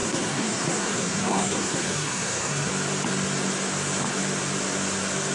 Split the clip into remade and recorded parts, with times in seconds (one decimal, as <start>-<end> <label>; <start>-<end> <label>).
0.0-2.7 remade; 2.7-5.3 recorded